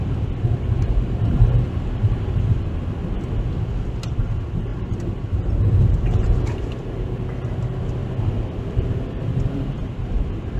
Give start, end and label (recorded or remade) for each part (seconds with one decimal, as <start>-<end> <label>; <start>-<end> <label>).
0.0-3.0 remade; 3.0-4.1 recorded; 4.1-4.7 remade; 4.7-5.8 recorded; 5.8-8.0 remade; 8.0-8.7 recorded; 8.7-10.6 remade